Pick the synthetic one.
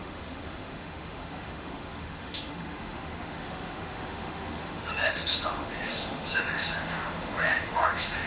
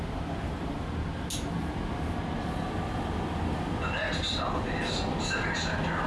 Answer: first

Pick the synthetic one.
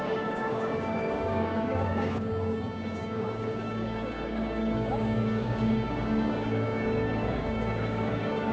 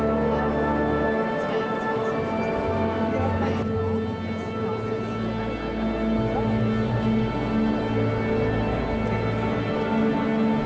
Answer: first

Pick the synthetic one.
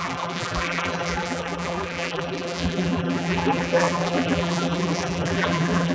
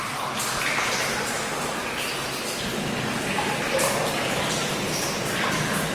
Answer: first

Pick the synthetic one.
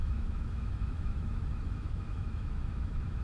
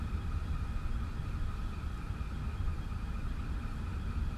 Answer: first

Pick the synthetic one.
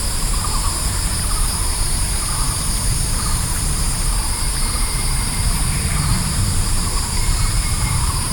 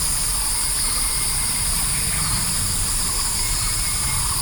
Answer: first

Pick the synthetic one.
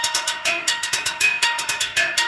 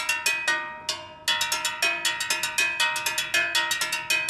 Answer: first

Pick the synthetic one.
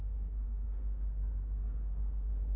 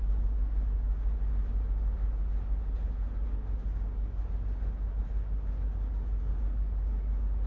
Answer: first